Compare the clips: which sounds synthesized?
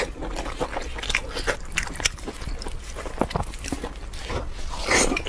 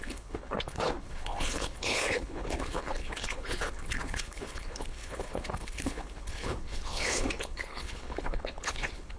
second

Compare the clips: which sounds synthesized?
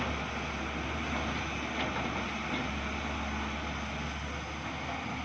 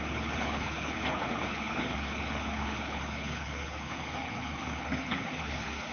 second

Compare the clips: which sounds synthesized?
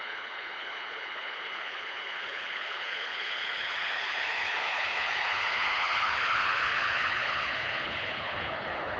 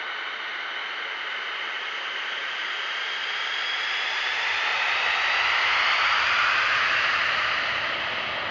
first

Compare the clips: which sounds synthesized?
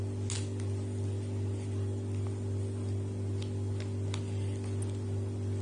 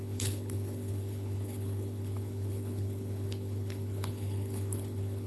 second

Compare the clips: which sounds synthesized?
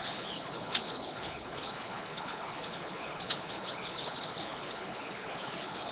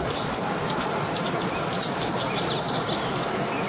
first